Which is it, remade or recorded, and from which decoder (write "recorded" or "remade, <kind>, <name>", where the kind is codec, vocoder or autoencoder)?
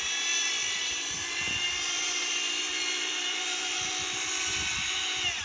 remade, vocoder, BigVGAN v2